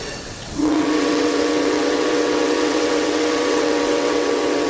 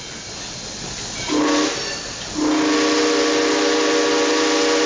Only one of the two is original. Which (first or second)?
second